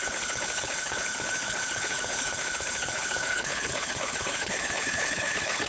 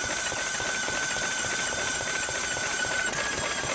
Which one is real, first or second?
second